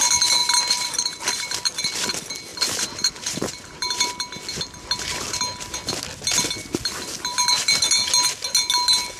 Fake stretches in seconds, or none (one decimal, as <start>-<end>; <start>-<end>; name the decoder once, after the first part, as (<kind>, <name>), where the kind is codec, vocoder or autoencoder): 0.4-1.6 (vocoder, BigVGAN v2); 2.5-4.1; 7.3-7.9

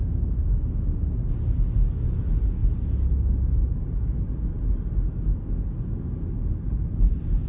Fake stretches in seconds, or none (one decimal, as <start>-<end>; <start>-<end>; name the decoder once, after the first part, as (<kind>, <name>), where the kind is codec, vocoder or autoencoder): none

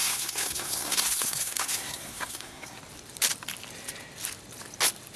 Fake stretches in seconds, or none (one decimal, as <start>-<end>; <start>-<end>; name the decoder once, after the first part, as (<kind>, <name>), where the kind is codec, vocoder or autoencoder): 0.0-2.8 (codec, SNAC)

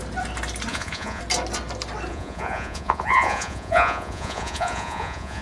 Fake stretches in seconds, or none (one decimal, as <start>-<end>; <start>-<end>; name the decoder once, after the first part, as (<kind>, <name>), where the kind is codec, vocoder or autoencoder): 0.7-1.2 (vocoder, Vocos); 2.1-5.4

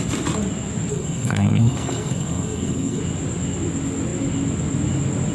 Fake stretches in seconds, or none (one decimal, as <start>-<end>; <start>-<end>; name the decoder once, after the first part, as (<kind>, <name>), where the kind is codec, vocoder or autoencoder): 0.9-3.0 (codec, SNAC)

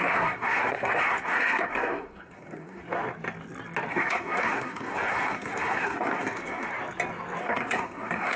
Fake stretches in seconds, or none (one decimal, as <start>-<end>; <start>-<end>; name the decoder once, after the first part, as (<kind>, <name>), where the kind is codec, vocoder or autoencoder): 0.0-2.8 (codec, SNAC); 3.9-6.7; 7.4-8.4